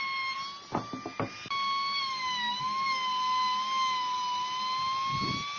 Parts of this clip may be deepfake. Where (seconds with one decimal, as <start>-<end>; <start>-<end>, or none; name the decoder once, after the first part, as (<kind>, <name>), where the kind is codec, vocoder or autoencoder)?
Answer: none